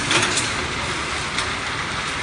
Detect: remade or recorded recorded